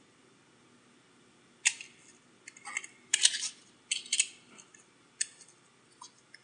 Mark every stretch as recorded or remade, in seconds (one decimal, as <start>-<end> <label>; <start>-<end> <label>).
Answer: 0.0-3.1 recorded; 3.1-3.6 remade; 3.6-6.4 recorded